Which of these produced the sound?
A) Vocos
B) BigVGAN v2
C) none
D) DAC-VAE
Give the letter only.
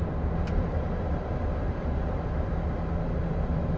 C